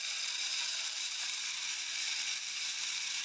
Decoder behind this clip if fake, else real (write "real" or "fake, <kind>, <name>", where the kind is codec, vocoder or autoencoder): fake, vocoder, BigVGAN v2